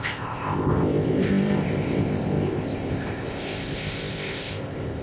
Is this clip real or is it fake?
fake